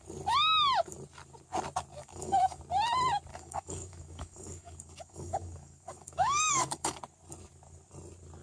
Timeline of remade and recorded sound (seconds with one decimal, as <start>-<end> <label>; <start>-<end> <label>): 0.0-1.9 recorded; 1.9-2.6 remade; 2.6-3.3 recorded; 3.3-7.0 remade; 7.0-8.4 recorded